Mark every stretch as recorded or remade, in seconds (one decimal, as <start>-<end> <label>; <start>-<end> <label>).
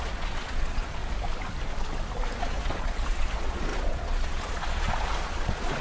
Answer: 0.0-1.0 remade; 1.0-2.4 recorded; 2.4-5.8 remade